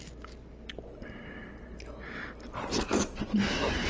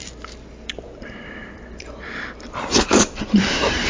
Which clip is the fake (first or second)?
second